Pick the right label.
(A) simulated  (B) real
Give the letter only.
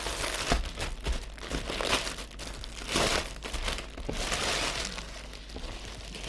B